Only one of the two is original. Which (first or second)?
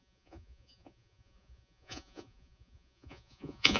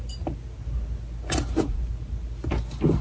second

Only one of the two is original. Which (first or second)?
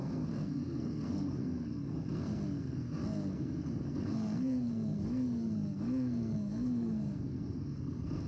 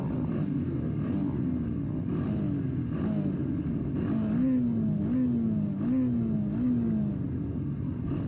second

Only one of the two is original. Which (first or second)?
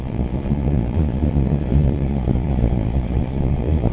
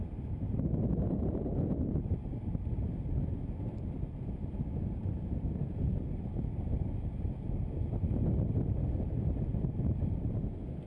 second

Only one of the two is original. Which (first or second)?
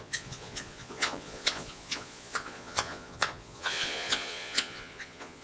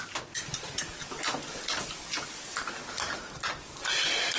second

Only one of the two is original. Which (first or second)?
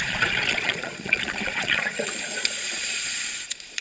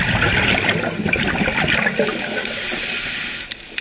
second